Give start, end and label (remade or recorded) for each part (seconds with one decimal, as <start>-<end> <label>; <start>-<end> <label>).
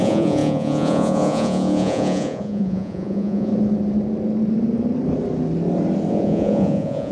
0.0-3.5 remade; 3.5-6.1 recorded; 6.1-7.1 remade